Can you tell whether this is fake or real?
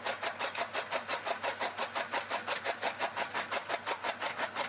real